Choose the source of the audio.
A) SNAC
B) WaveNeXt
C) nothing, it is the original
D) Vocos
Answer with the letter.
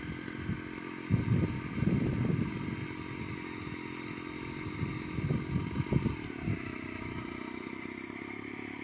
C